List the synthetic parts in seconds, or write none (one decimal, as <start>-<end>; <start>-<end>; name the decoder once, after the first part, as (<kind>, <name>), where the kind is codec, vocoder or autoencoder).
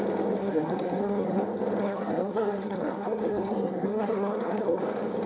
0.4-1.4 (codec, SNAC); 1.8-4.8